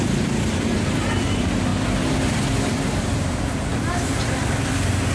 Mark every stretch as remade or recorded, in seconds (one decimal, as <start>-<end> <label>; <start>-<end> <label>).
0.0-5.1 recorded